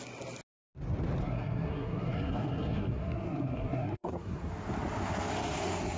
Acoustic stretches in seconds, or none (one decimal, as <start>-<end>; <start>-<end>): 0.0-1.2; 4.5-6.0